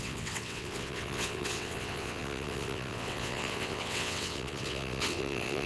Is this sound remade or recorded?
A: remade